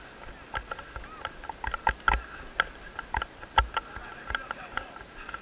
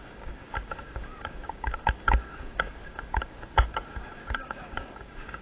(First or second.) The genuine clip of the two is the first